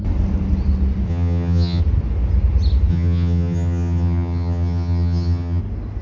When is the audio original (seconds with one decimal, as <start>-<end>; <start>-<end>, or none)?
0.0-1.1; 1.8-2.9; 5.6-6.0